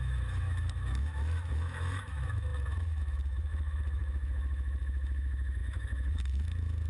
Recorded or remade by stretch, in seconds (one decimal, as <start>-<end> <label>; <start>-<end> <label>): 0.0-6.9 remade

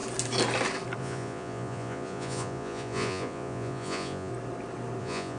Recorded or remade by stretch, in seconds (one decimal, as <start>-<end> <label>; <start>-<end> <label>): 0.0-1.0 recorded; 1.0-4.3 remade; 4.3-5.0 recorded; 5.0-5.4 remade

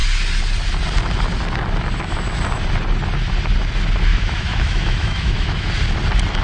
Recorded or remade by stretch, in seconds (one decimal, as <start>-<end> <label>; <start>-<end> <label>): 0.0-4.1 recorded; 4.1-5.7 remade; 5.7-6.4 recorded